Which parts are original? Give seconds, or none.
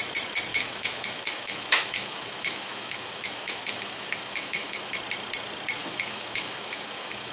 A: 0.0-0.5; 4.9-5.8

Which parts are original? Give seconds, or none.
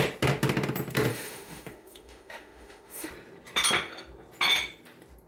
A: 0.0-1.1; 3.1-5.3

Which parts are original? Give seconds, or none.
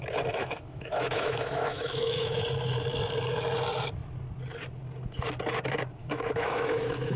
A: 0.0-0.4; 2.4-6.0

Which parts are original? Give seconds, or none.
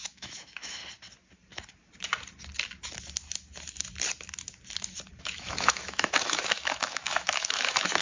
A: 0.8-5.2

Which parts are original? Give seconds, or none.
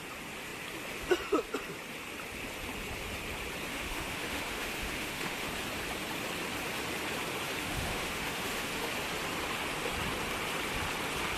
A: 0.0-3.7; 5.5-7.6; 8.9-11.4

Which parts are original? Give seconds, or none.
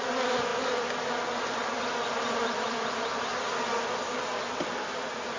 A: 0.0-5.4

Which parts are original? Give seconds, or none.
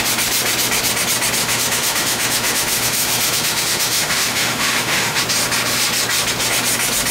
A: 0.0-1.4; 5.2-7.1